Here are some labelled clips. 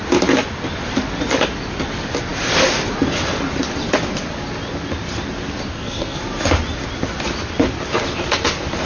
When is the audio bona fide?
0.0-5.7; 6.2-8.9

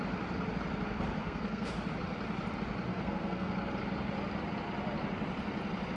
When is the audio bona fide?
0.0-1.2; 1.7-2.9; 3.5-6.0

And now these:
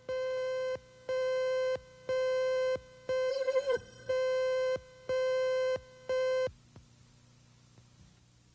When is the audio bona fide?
0.0-3.3; 4.1-8.5

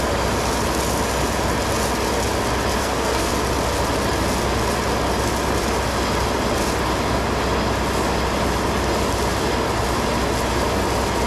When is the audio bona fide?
0.0-2.8; 3.3-11.3

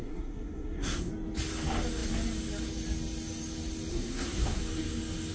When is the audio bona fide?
1.1-3.9; 4.6-5.3

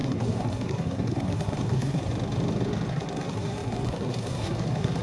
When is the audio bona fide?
2.1-2.9

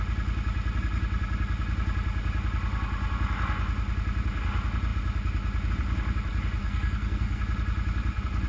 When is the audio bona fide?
0.0-6.6; 7.4-8.5

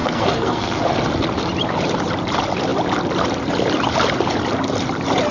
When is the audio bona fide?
0.8-5.3